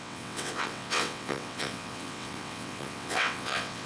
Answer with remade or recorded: remade